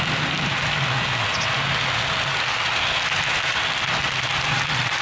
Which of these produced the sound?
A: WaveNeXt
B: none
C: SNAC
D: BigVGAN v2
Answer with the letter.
B